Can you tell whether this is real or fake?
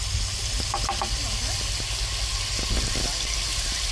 real